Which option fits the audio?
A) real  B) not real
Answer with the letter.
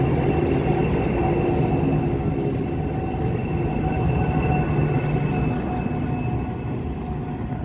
A